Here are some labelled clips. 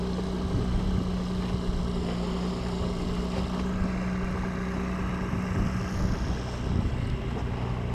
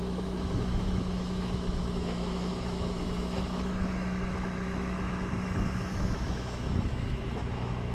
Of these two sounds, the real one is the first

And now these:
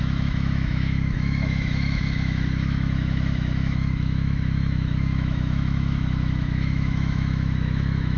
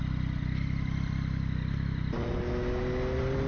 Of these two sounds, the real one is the second